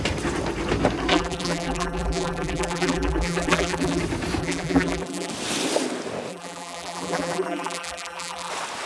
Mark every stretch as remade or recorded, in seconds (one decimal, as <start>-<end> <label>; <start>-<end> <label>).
0.0-1.1 recorded; 1.1-4.0 remade; 4.0-4.4 recorded; 4.4-5.3 remade; 5.3-6.3 recorded; 6.3-8.5 remade; 8.5-8.9 recorded